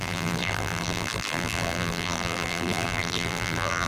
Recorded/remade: remade